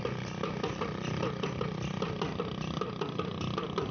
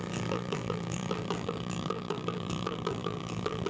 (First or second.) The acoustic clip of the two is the first